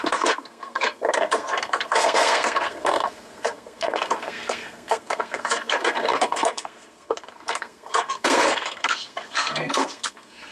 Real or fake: fake